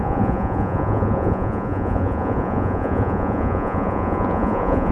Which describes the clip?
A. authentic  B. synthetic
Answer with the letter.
B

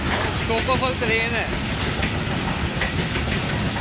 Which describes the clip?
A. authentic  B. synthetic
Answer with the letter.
A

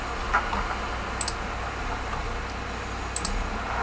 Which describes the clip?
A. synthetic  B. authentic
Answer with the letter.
B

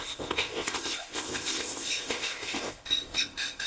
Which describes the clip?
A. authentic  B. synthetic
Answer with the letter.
B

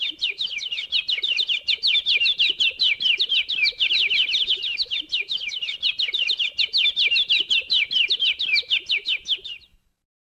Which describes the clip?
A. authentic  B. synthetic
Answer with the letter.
B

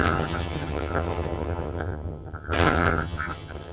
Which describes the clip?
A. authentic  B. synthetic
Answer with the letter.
B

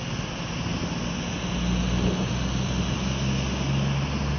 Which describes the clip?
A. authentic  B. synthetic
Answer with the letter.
A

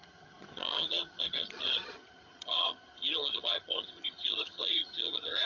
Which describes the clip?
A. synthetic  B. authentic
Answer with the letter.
A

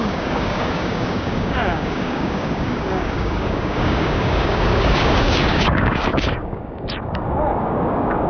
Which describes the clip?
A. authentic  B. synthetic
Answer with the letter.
B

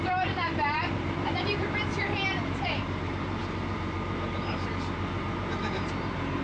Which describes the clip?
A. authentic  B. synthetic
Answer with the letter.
B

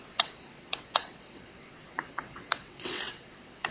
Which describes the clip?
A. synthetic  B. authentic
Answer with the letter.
A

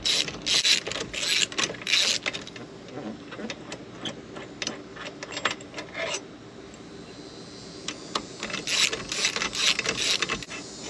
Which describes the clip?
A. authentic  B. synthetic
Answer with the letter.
A